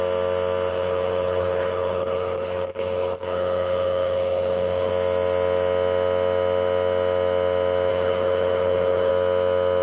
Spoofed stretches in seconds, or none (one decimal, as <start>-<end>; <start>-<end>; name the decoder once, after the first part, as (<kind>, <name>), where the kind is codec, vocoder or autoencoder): 0.7-4.9 (codec, HILCodec); 7.9-9.1